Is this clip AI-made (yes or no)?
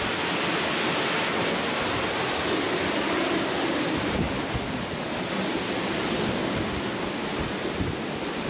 no